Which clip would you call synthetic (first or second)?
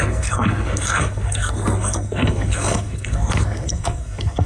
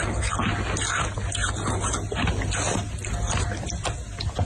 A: first